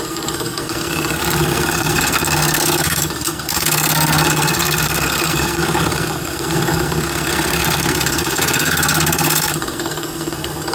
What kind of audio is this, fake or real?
fake